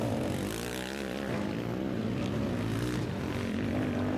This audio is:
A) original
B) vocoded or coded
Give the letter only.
A